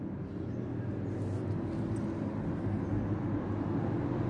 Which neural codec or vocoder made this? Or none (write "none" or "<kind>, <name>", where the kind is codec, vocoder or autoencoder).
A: none